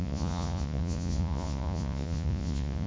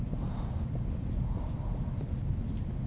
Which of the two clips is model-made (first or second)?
first